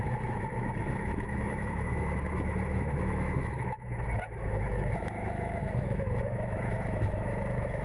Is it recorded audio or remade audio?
remade